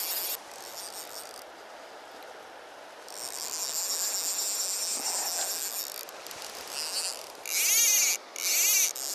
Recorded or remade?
recorded